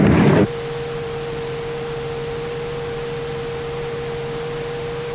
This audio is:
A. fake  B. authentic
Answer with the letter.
B